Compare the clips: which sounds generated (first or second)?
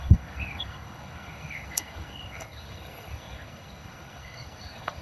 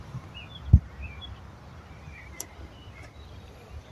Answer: first